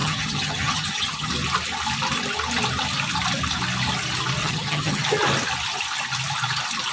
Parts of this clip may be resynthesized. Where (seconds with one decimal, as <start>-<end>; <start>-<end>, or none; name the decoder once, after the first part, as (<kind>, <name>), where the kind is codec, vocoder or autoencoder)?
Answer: 0.0-1.3 (vocoder, HiFi-GAN); 4.4-5.0